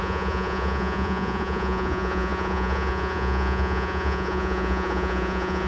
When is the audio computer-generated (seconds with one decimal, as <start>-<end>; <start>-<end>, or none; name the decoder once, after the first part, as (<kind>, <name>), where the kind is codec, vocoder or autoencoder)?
0.0-5.7 (vocoder, Vocos)